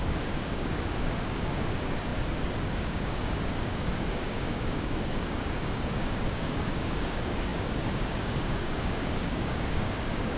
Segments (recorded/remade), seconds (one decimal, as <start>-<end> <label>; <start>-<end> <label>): 0.0-10.4 remade